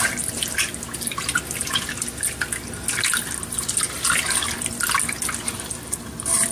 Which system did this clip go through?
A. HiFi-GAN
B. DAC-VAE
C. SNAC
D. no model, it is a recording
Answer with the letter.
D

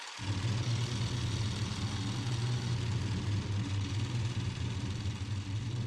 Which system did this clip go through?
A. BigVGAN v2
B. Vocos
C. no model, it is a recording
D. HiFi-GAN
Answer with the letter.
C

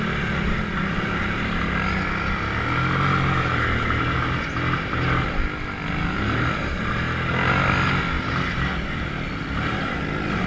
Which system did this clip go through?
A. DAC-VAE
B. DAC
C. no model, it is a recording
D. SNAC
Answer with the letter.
C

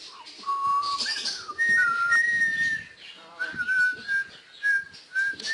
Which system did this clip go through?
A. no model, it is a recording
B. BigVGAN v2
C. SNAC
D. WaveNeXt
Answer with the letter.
A